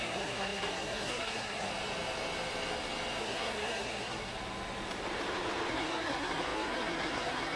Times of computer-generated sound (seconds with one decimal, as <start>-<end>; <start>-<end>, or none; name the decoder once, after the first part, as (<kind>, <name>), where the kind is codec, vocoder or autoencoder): 0.0-1.7 (codec, SNAC); 3.2-4.3; 5.7-7.6